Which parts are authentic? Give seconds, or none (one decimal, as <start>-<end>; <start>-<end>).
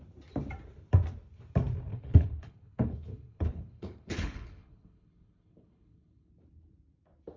0.0-1.9; 6.3-7.4